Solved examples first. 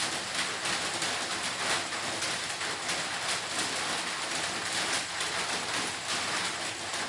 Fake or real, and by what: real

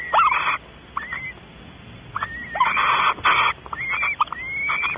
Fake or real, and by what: real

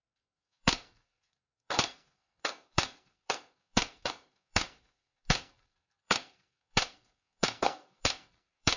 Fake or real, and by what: fake, codec, SNAC